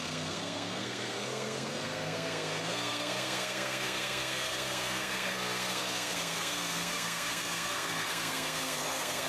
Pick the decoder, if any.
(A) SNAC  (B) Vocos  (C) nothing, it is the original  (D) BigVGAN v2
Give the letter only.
A